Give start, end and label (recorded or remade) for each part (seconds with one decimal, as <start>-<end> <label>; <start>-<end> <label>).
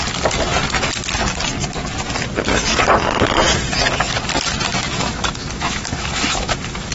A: 0.0-4.7 recorded; 4.7-6.9 remade